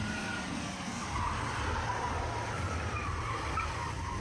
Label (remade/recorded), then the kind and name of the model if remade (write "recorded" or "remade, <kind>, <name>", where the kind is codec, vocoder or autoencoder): recorded